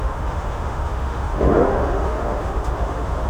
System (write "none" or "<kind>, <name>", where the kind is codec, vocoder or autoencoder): autoencoder, DAC-VAE